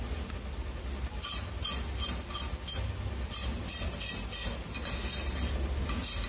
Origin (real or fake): real